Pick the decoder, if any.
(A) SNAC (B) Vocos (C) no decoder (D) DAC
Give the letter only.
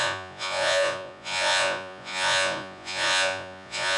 B